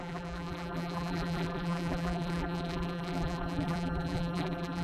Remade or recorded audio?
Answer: remade